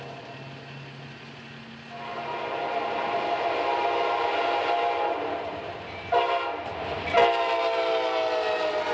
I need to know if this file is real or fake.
real